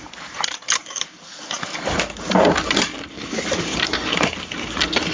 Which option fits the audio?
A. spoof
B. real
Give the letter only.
B